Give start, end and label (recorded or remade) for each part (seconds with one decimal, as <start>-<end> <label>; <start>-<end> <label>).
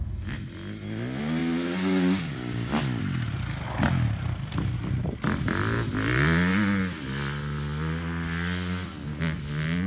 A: 0.0-1.4 recorded; 1.4-3.0 remade; 3.0-9.9 recorded